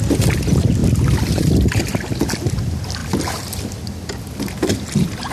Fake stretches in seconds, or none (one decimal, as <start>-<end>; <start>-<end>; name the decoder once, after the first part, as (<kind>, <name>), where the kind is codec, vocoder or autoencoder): 0.8-1.8 (vocoder, BigVGAN v2); 3.0-3.7